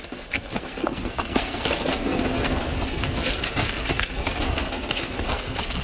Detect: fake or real fake